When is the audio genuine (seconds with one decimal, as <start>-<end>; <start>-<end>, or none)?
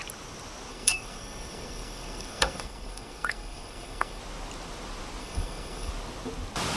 0.0-0.7; 4.2-5.2; 5.9-6.8